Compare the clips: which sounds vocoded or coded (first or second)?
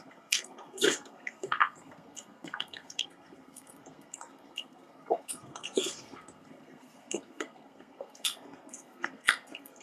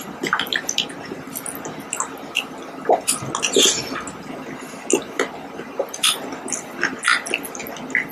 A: first